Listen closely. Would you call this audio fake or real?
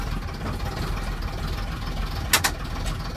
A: real